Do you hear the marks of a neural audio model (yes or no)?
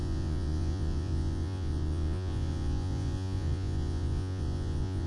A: yes